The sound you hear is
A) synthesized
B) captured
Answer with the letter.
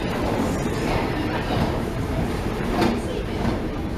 A